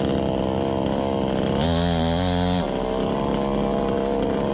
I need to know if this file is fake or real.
real